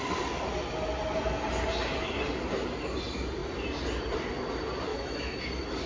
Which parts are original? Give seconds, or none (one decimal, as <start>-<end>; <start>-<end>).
0.0-4.9; 5.4-5.9